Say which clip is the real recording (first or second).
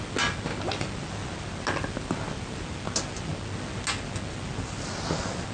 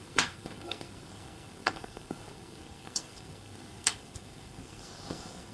first